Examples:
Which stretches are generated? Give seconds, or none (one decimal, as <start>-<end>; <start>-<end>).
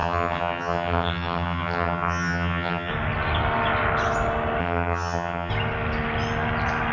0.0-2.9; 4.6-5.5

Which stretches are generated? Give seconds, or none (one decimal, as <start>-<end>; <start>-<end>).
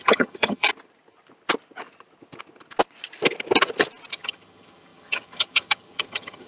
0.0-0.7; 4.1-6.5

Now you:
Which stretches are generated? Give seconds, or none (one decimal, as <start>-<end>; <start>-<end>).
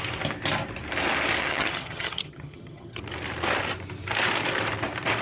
1.4-3.0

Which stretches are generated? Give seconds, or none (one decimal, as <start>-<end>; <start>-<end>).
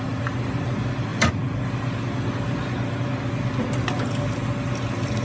none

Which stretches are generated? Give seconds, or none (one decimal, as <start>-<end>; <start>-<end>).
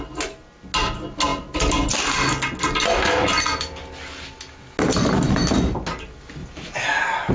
none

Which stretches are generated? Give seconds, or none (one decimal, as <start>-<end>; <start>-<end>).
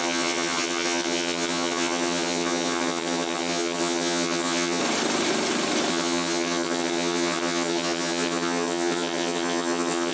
0.0-4.8; 5.9-10.1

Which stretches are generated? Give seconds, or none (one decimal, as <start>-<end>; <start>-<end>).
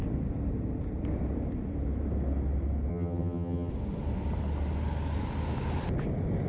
2.9-3.7